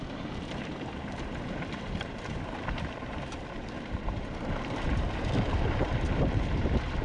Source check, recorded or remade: remade